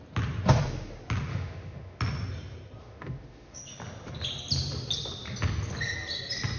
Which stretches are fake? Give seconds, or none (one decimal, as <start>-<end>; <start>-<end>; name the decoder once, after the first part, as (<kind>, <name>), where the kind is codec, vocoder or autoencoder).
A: 1.3-2.0 (autoencoder, DAC-VAE); 2.8-3.6